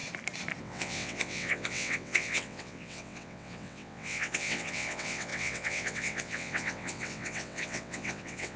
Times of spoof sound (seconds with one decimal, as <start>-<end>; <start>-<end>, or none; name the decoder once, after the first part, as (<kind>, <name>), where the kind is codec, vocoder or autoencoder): 0.6-8.6 (vocoder, WaveNeXt)